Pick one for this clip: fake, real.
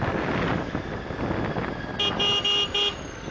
real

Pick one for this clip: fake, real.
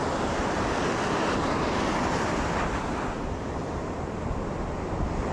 real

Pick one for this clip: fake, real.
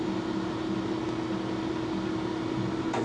real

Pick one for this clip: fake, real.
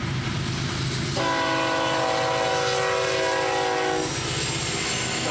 real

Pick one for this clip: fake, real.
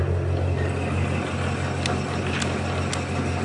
real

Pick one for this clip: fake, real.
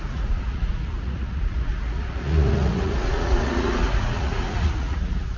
fake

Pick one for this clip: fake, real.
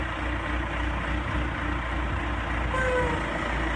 real